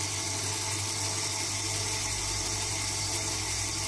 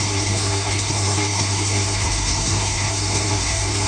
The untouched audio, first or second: first